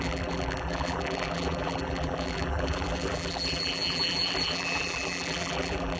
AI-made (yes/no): yes